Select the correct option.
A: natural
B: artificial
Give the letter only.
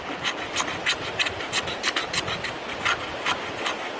A